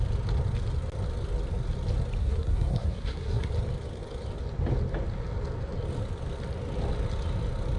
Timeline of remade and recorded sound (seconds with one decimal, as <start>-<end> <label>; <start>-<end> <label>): 0.0-2.2 recorded; 2.2-3.5 remade; 3.5-7.8 recorded